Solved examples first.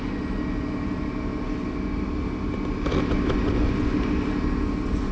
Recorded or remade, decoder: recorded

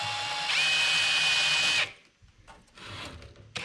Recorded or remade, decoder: recorded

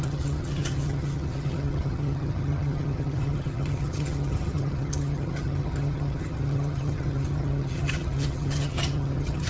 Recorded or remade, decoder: remade, vocoder, HiFi-GAN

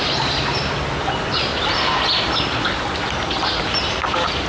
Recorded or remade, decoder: recorded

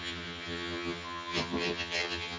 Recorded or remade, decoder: remade, vocoder, HiFi-GAN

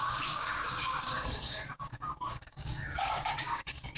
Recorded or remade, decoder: remade, codec, DAC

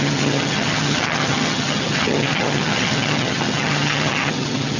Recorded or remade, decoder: remade, vocoder, HiFi-GAN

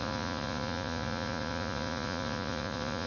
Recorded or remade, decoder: remade, vocoder, Vocos